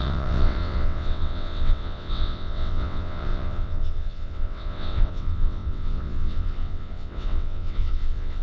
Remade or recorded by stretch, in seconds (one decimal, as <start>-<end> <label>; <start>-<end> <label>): 0.0-8.4 remade